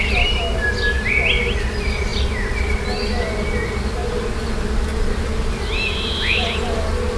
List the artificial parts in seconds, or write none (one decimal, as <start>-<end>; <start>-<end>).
none